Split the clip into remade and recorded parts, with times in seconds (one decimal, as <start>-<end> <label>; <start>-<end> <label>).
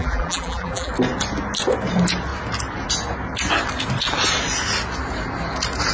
0.0-0.9 remade; 0.9-5.9 recorded